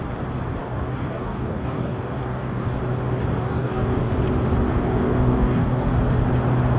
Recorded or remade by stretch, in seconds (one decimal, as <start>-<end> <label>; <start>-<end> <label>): 0.0-0.6 recorded; 0.6-2.8 remade; 2.8-3.4 recorded; 3.4-4.1 remade; 4.1-4.7 recorded; 4.7-5.9 remade; 5.9-6.8 recorded